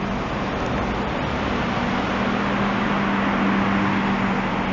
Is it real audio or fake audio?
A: real